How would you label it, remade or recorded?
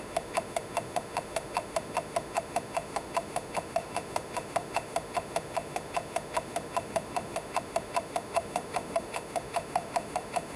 remade